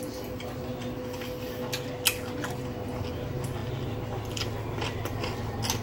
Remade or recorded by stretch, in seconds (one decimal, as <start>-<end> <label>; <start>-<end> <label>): 0.0-5.8 recorded